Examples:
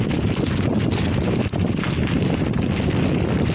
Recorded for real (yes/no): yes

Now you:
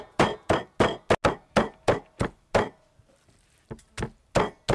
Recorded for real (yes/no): yes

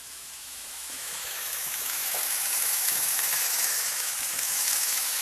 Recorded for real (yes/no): no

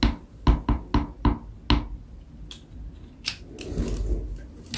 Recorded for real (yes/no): yes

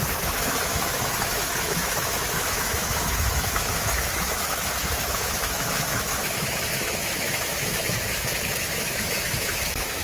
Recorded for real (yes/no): no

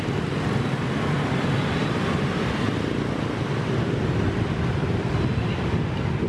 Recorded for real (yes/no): yes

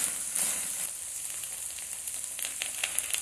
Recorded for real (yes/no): yes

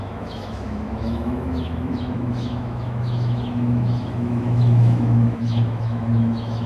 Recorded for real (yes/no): no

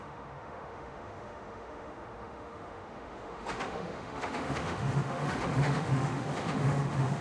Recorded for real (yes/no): no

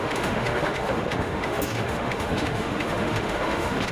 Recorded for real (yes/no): no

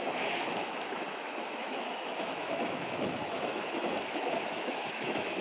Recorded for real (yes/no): no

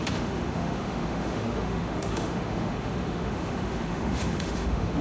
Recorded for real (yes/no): no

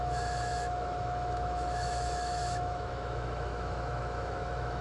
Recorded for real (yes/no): no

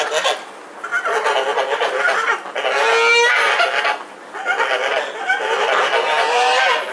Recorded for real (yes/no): yes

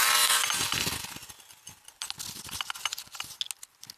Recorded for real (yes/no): yes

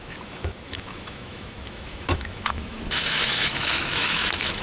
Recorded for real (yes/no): no